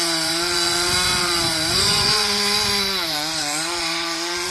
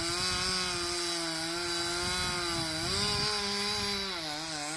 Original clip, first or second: second